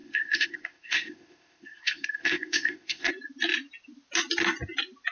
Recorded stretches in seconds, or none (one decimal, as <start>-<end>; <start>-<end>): 3.1-5.1

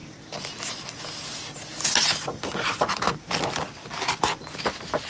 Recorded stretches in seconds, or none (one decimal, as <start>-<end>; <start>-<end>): 0.0-5.1

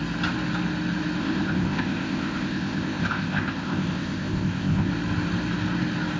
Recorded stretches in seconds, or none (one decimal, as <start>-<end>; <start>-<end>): 0.0-1.2; 4.9-6.2

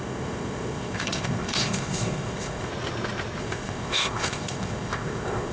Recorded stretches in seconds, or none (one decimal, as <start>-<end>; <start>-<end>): 2.7-3.4

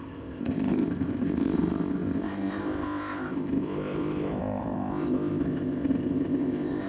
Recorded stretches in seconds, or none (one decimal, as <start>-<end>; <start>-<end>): none

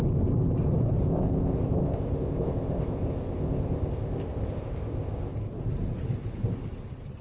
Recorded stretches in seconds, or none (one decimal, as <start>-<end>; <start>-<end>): 0.0-1.0; 5.3-7.2